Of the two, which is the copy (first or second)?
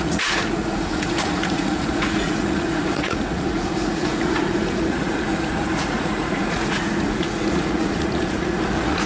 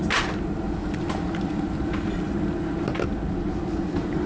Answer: first